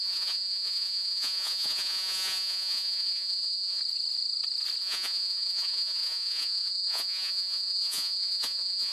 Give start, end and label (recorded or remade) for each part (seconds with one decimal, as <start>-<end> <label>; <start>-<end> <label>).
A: 0.0-3.8 remade; 3.8-4.8 recorded; 4.8-8.9 remade